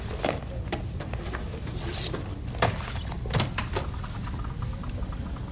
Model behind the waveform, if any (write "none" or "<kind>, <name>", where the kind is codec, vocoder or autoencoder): vocoder, BigVGAN v2